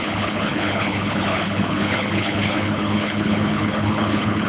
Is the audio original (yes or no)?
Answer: no